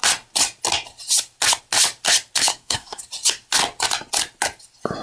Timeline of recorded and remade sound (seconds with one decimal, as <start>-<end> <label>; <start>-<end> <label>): 0.0-2.5 recorded; 2.5-3.0 remade; 3.0-5.0 recorded

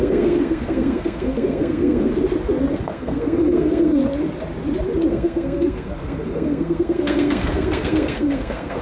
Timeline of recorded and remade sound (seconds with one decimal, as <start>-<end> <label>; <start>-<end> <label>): 0.0-2.1 remade; 2.1-2.7 recorded; 2.7-4.0 remade; 4.0-5.1 recorded; 5.1-8.8 remade

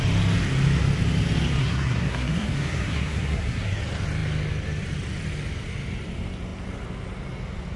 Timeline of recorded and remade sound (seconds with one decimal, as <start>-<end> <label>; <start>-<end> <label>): 0.0-1.6 recorded; 1.6-3.8 remade; 3.8-7.8 recorded

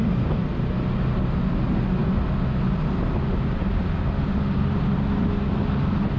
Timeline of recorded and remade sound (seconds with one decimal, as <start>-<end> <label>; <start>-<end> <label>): 0.0-6.2 recorded

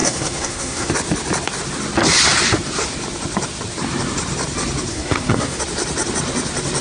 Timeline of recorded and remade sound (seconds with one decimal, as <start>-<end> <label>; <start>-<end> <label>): 0.0-0.9 remade; 0.9-4.9 recorded; 4.9-5.6 remade; 5.6-6.8 recorded

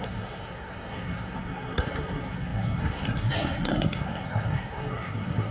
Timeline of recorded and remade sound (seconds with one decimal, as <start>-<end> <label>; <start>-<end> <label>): 0.0-5.5 remade

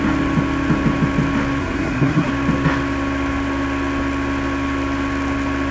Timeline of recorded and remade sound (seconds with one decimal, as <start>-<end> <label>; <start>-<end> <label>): 0.0-1.6 recorded; 1.6-2.3 remade; 2.3-5.7 recorded